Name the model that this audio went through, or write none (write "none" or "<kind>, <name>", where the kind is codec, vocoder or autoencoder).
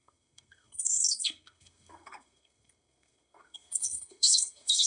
codec, SNAC